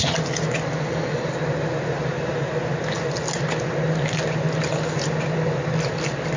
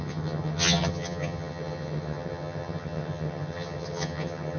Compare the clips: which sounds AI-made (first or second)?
second